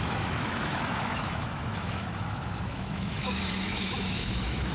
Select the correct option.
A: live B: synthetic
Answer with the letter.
B